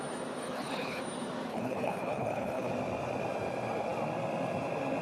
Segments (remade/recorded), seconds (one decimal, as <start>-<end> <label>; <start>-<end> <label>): 0.0-0.4 recorded; 0.4-1.0 remade; 1.0-1.5 recorded; 1.5-2.7 remade; 2.7-5.0 recorded